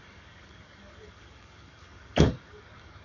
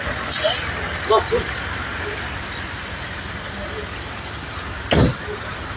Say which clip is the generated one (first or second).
first